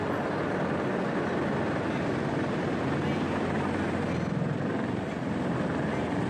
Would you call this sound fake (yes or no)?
no